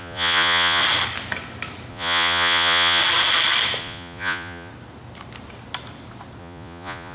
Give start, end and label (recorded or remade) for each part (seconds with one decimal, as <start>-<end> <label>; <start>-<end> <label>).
0.0-0.8 remade; 0.8-1.9 recorded; 1.9-3.0 remade; 3.0-3.8 recorded; 3.8-4.7 remade; 4.7-6.4 recorded; 6.4-7.1 remade